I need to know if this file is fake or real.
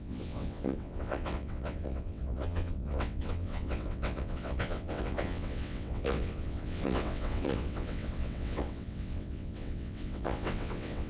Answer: fake